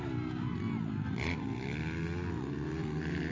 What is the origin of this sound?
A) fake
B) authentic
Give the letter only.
B